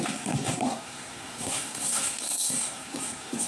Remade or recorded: remade